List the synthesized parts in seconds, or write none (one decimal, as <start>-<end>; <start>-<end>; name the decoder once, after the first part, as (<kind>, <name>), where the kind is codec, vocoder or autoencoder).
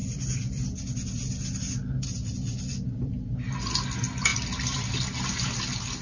none